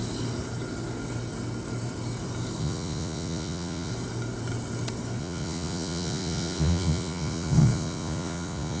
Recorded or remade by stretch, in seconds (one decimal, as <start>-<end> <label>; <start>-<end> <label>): 0.0-2.6 recorded; 2.6-3.9 remade; 3.9-5.2 recorded; 5.2-8.8 remade